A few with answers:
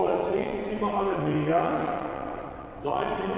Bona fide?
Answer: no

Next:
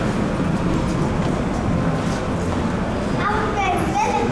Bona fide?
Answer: yes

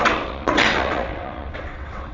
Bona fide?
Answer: no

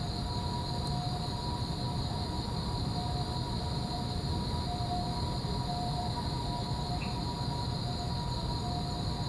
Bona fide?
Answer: yes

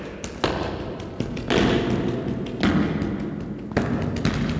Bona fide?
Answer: yes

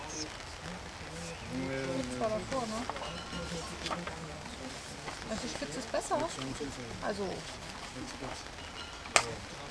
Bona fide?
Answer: yes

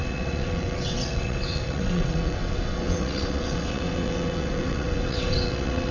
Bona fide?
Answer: no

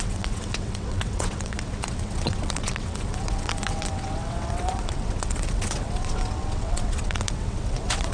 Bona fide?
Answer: no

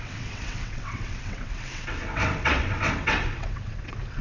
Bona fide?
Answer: no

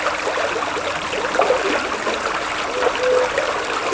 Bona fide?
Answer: yes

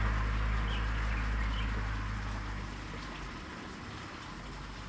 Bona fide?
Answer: yes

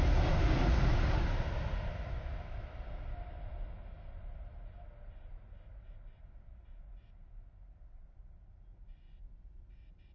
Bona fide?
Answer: yes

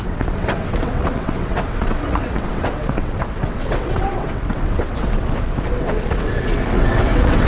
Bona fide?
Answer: no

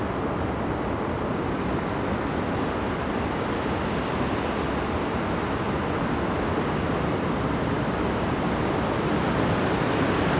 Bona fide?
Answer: yes